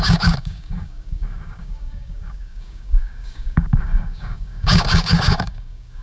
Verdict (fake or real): fake